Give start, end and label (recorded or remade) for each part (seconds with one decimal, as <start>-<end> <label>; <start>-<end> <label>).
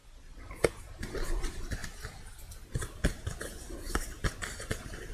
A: 0.0-5.1 recorded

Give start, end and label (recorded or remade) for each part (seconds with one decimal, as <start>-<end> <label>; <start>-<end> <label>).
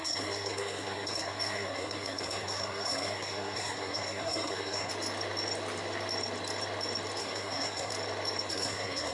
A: 0.0-4.9 remade; 4.9-7.2 recorded; 7.2-7.9 remade; 7.9-8.5 recorded; 8.5-9.1 remade